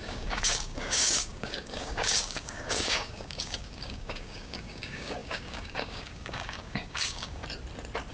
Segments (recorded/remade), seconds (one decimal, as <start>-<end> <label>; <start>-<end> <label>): 0.0-7.4 remade; 7.4-8.1 recorded